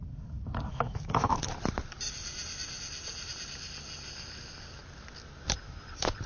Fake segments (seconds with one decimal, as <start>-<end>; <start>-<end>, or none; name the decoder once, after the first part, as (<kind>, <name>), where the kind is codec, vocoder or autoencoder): 0.7-1.5 (autoencoder, DAC-VAE)